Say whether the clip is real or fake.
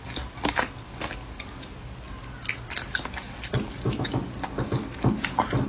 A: real